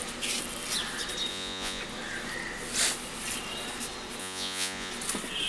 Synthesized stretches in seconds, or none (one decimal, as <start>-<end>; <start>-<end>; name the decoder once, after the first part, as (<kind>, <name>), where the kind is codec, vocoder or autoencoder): 1.3-1.8 (vocoder, Vocos); 4.2-4.9